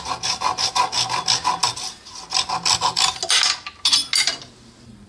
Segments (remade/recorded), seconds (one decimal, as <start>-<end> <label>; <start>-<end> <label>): 0.0-5.1 recorded